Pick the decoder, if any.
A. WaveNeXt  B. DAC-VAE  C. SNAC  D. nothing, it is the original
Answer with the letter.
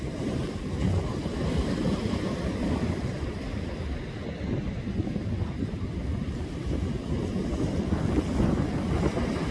D